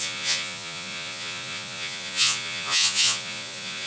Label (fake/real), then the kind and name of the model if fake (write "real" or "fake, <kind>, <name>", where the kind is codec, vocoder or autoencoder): fake, vocoder, Vocos